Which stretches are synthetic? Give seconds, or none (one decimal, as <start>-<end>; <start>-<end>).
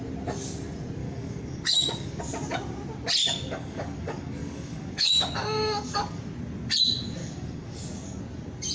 1.0-2.2; 3.2-6.2; 7.2-8.2